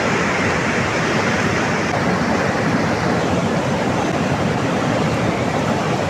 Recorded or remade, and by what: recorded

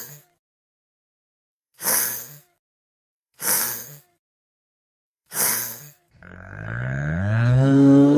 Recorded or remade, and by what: remade, codec, SNAC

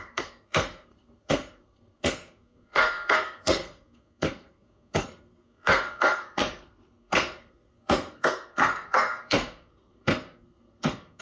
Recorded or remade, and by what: remade, codec, SNAC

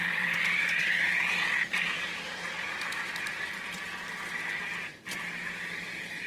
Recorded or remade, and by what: recorded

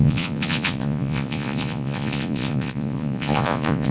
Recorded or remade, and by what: remade, vocoder, Vocos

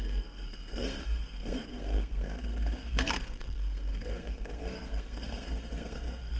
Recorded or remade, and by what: remade, codec, SNAC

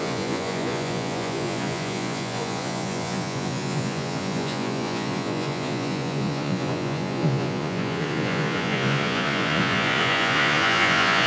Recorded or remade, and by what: remade, vocoder, Vocos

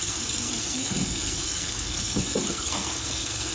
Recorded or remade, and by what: remade, codec, SNAC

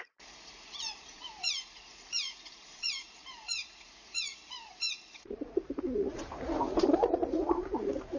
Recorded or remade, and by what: remade, vocoder, Vocos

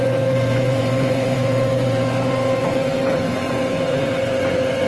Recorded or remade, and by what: remade, vocoder, Vocos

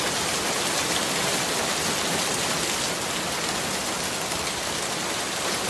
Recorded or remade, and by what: recorded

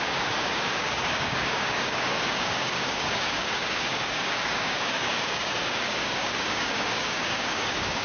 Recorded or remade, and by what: remade, codec, DAC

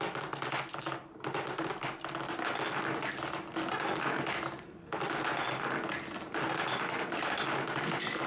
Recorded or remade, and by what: recorded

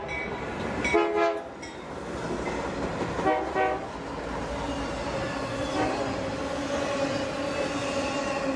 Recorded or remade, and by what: recorded